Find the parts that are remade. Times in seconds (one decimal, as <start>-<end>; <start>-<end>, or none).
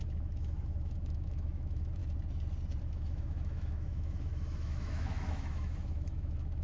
0.0-2.0; 2.8-6.6